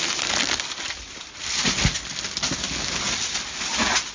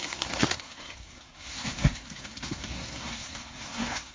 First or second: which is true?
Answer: first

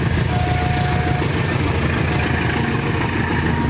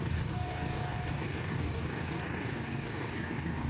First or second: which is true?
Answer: first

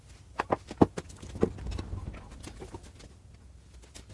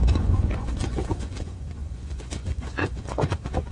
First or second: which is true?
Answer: first